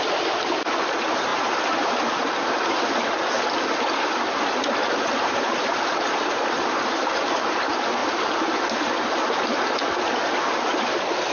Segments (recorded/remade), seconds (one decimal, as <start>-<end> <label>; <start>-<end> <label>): 0.0-11.3 recorded